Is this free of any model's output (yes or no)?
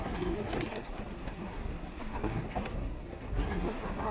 no